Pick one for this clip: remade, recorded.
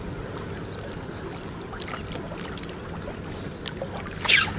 recorded